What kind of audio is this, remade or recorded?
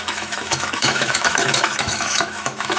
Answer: remade